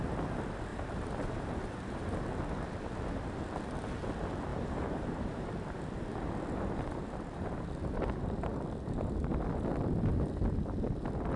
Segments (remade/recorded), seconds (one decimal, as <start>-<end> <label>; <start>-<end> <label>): 0.0-0.7 recorded; 0.7-2.2 remade; 2.2-4.5 recorded; 4.5-5.5 remade; 5.5-11.4 recorded